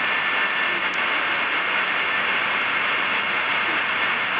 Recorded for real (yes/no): yes